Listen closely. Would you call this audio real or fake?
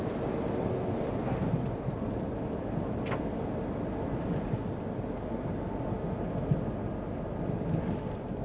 real